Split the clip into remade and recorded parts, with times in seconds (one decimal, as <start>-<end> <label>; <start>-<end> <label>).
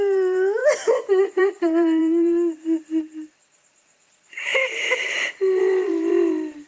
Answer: 0.0-0.6 remade; 0.6-1.1 recorded; 1.1-6.7 remade